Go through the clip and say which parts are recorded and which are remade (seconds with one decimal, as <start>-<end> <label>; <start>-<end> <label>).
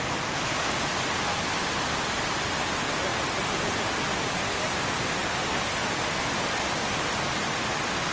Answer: 0.0-8.1 recorded